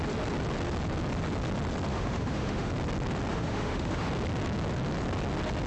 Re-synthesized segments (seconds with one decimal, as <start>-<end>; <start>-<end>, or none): 1.9-2.7; 3.3-4.1